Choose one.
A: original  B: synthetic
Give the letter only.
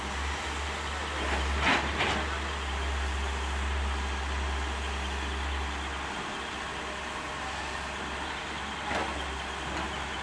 A